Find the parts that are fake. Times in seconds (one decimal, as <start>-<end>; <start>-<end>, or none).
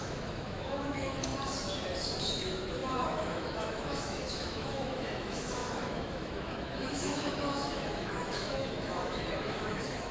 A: 0.0-1.3; 2.2-10.1